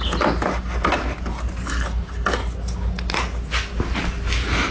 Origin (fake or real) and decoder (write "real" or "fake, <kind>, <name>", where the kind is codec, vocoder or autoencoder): real